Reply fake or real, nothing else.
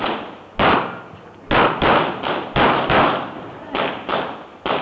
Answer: real